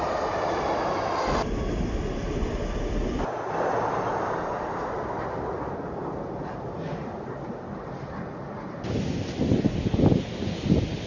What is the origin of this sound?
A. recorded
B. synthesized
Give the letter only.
A